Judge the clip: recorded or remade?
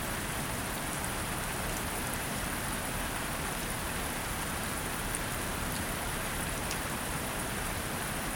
remade